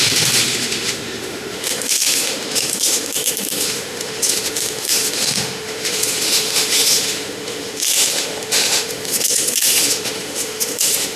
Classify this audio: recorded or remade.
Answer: remade